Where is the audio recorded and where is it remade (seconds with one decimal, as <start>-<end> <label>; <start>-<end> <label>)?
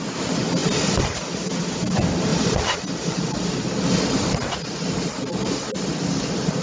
0.0-6.6 recorded